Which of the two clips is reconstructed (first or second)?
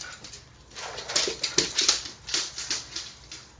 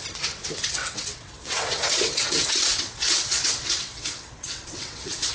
second